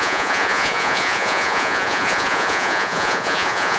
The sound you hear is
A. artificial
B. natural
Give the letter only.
A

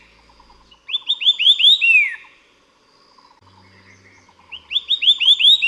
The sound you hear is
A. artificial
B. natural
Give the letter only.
B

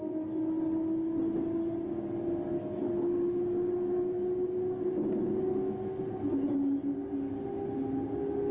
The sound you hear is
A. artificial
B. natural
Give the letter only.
B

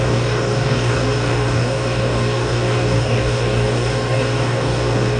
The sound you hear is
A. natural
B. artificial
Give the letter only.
B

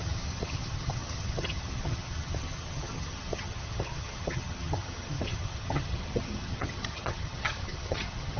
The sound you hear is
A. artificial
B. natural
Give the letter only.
A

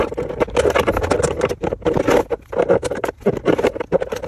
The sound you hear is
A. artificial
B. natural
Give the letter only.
B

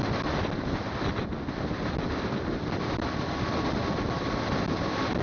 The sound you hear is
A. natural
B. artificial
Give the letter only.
A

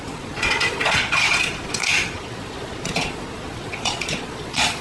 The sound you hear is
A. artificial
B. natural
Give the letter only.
A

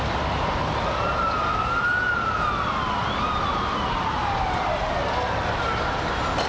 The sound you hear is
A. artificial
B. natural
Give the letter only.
B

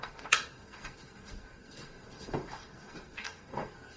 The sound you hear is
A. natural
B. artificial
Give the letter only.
B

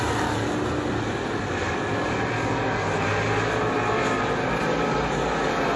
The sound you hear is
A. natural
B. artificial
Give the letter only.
A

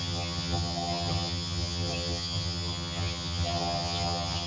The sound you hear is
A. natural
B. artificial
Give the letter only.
B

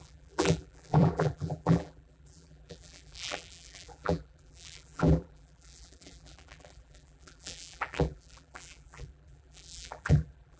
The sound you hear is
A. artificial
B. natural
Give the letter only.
A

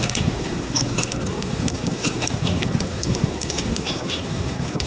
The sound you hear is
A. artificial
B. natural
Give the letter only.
A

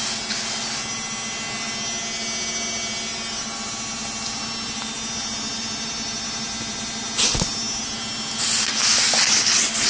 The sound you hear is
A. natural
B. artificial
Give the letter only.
A